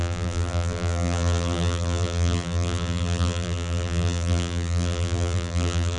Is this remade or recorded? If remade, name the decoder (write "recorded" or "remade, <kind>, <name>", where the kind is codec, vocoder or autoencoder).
remade, vocoder, BigVGAN v2